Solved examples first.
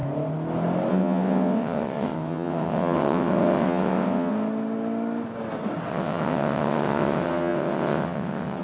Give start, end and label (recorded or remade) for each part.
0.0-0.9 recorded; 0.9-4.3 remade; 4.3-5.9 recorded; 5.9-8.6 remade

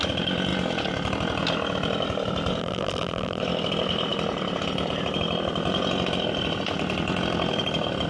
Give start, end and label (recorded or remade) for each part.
0.0-2.6 recorded; 2.6-3.4 remade; 3.4-8.1 recorded

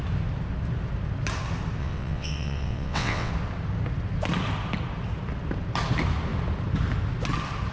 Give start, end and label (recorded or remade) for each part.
0.0-1.8 recorded; 1.8-3.3 remade; 3.3-7.7 recorded

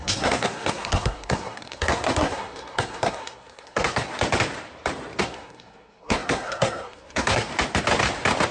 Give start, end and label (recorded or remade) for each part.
0.0-4.1 remade; 4.1-5.2 recorded; 5.2-7.5 remade; 7.5-8.5 recorded

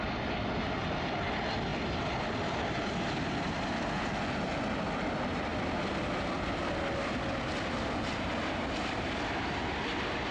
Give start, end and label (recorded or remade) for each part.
0.0-10.3 recorded

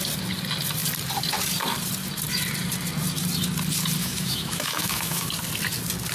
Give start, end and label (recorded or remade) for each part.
0.0-4.0 recorded; 4.0-5.3 remade; 5.3-6.1 recorded

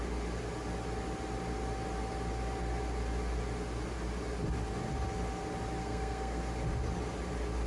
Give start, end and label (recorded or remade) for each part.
0.0-5.8 recorded; 5.8-6.4 remade; 6.4-7.7 recorded